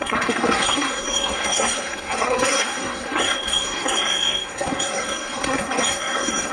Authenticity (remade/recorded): remade